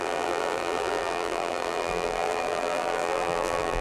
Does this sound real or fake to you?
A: fake